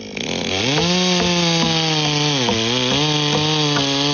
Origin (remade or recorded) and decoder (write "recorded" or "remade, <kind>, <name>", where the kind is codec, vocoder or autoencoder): recorded